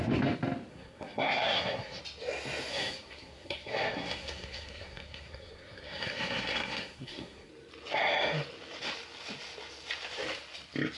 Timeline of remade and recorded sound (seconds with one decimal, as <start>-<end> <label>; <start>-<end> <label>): 0.0-0.7 recorded; 0.7-2.0 remade; 2.0-2.7 recorded; 2.7-7.5 remade; 7.5-11.0 recorded